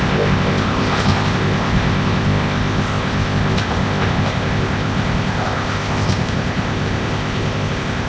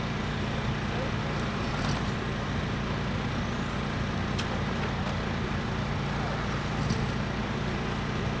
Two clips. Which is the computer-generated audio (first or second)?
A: first